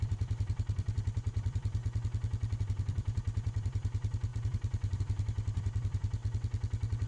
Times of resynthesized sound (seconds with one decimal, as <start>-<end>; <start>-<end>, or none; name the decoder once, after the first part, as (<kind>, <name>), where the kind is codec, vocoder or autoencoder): 0.0-1.8 (vocoder, BigVGAN v2); 2.6-6.2